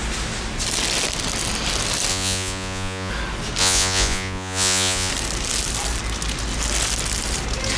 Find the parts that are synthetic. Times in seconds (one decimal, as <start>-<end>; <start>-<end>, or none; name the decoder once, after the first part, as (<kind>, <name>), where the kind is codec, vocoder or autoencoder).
2.1-3.1 (vocoder, Vocos); 3.6-5.1